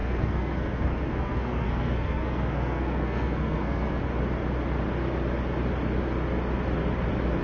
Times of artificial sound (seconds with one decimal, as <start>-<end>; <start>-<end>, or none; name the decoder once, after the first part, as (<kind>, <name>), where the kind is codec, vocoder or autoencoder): 0.0-4.0 (codec, SNAC)